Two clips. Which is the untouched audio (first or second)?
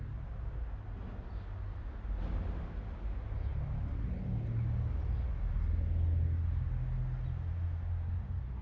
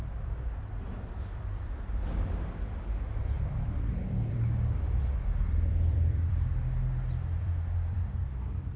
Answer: first